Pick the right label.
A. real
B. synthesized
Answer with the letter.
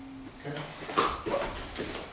A